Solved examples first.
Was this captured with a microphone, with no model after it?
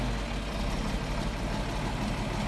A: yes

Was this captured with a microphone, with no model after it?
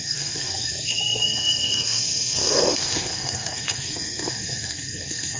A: no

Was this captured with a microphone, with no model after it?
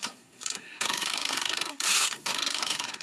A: no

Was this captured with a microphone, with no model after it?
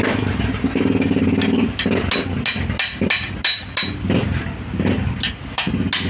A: yes